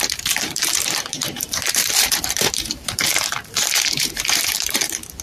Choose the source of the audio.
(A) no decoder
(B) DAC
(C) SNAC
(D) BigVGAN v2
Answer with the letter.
D